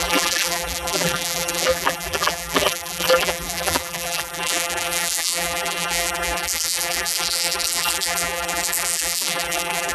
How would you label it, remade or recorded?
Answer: remade